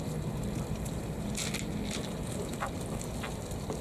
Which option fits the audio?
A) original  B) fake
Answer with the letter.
A